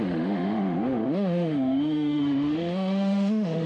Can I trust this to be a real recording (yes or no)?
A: no